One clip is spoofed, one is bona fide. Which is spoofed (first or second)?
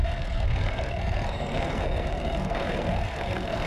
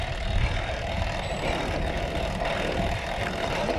first